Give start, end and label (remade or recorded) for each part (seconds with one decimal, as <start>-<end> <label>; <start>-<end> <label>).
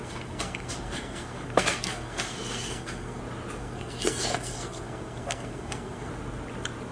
0.0-3.2 remade; 3.2-3.6 recorded; 3.6-6.1 remade; 6.1-6.9 recorded